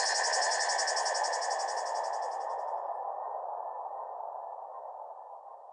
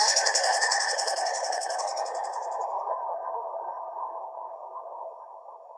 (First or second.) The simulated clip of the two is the second